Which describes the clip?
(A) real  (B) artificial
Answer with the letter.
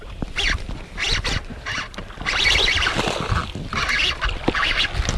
A